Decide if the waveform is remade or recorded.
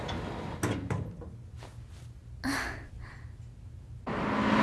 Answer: recorded